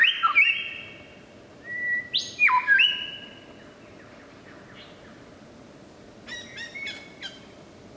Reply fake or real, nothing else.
real